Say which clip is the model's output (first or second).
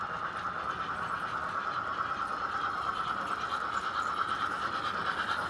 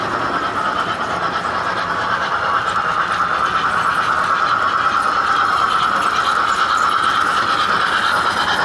first